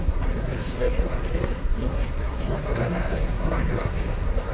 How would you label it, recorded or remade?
remade